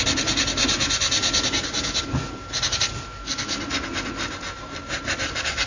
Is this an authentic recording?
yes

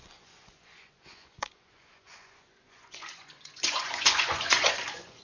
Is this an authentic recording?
no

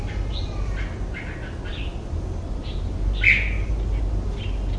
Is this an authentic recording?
yes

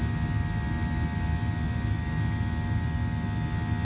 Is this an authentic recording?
yes